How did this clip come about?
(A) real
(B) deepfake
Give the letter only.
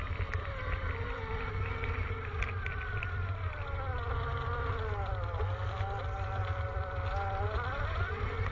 A